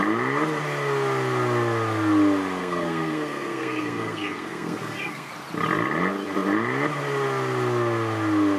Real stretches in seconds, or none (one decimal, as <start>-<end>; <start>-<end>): 0.0-2.6; 5.3-8.6

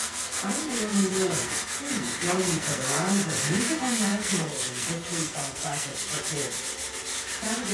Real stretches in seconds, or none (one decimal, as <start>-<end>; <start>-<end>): 5.9-7.7

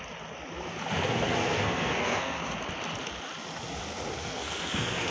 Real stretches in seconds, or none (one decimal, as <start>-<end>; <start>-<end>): 0.0-1.3; 2.4-4.2

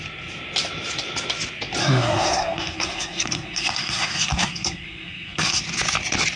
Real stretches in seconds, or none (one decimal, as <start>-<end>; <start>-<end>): 0.0-1.8; 5.6-6.4

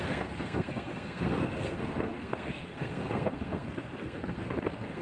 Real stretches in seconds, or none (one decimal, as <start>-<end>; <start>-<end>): none

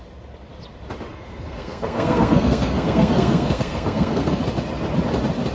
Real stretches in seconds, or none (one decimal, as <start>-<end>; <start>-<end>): 0.0-1.1; 4.4-5.5

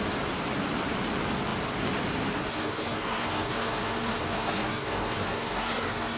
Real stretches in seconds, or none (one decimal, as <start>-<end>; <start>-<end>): 0.0-2.5